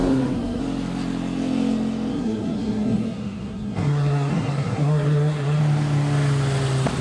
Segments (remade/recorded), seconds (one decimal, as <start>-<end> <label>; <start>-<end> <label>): 0.0-0.6 remade; 0.6-2.1 recorded; 2.1-5.6 remade; 5.6-7.0 recorded